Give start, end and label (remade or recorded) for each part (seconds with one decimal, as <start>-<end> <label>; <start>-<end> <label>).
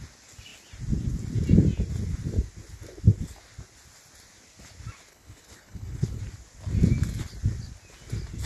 0.0-5.1 recorded; 5.1-6.2 remade; 6.2-8.5 recorded